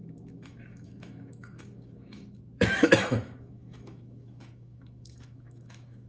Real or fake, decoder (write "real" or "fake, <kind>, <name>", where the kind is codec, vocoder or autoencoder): fake, autoencoder, DAC-VAE